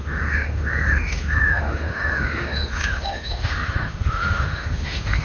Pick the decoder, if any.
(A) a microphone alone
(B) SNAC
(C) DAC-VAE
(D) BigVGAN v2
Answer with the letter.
C